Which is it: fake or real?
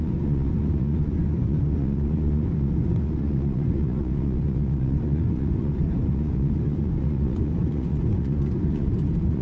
fake